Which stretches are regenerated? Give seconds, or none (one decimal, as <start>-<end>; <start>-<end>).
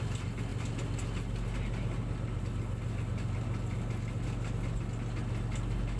none